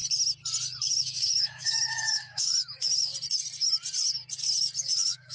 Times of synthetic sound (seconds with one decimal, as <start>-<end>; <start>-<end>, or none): 0.8-3.1; 4.8-5.3